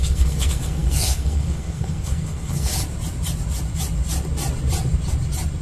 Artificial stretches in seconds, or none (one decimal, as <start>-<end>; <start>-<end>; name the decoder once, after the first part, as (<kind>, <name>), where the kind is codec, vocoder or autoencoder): 0.0-2.7 (codec, SNAC)